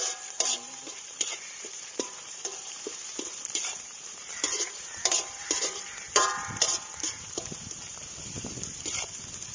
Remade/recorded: remade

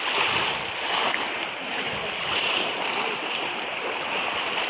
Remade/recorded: remade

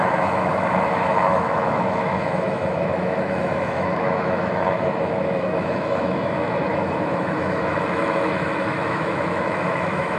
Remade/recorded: remade